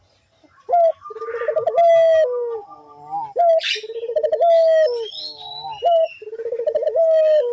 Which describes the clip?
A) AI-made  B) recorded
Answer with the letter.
B